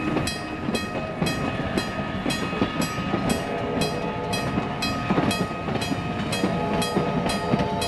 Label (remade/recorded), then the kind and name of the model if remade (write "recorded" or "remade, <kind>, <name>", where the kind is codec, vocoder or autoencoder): recorded